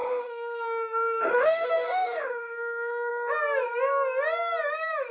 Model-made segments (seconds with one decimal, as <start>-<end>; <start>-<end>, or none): 0.0-3.1